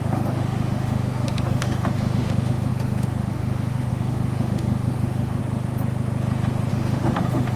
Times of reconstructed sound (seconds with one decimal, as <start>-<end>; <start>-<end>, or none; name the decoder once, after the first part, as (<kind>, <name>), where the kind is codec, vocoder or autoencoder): 0.0-5.4 (autoencoder, DAC-VAE); 6.7-7.6